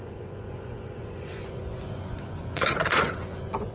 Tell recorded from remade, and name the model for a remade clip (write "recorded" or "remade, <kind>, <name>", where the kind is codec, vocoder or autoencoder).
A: remade, vocoder, Vocos